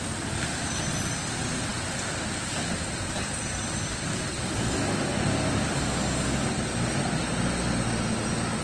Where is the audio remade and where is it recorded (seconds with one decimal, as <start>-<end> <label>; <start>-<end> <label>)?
0.0-8.6 recorded